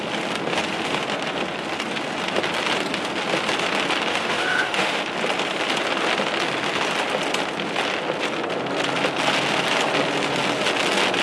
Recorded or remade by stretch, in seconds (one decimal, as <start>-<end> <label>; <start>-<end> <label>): 0.0-4.1 recorded; 4.1-5.0 remade; 5.0-11.2 recorded